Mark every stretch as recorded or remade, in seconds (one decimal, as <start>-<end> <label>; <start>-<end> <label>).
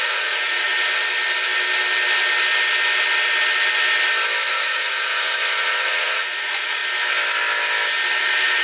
0.0-0.7 remade; 0.7-4.5 recorded; 4.5-6.8 remade; 6.8-8.2 recorded; 8.2-8.6 remade